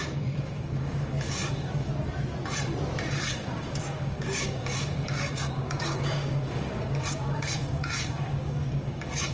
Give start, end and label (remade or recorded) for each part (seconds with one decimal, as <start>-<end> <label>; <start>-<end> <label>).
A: 0.0-1.9 remade; 1.9-3.1 recorded; 3.1-9.3 remade